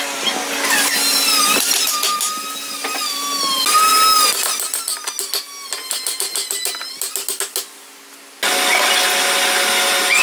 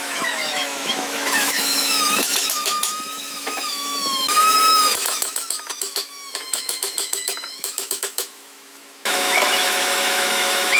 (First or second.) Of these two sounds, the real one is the first